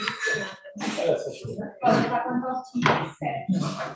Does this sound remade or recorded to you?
recorded